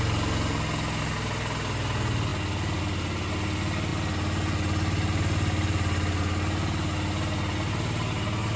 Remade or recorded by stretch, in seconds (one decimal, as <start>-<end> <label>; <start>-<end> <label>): 0.0-8.6 recorded